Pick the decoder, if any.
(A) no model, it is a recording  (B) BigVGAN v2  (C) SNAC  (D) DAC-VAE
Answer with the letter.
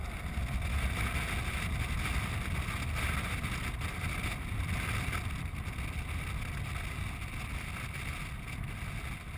A